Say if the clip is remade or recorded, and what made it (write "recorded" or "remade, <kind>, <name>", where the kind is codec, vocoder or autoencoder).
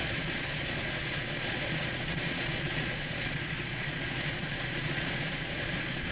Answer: remade, vocoder, Vocos